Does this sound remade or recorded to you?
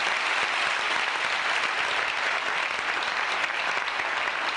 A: recorded